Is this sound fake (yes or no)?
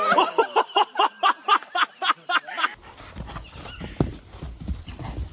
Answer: no